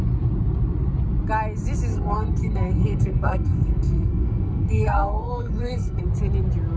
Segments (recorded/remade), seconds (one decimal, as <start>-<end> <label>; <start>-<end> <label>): 0.0-1.9 recorded; 1.9-6.0 remade; 6.0-6.8 recorded